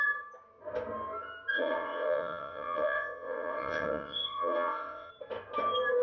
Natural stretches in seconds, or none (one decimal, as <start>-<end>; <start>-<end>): 0.0-1.5; 5.1-6.0